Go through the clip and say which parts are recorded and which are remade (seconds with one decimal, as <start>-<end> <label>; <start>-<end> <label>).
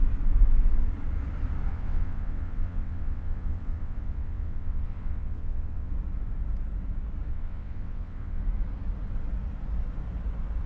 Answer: 0.0-1.7 recorded; 1.7-5.9 remade; 5.9-7.3 recorded; 7.3-8.4 remade; 8.4-10.7 recorded